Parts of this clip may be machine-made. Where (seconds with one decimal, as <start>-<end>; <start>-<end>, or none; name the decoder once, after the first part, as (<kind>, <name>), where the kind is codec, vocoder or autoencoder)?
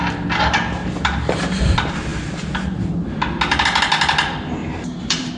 0.8-1.6 (vocoder, BigVGAN v2); 4.6-5.4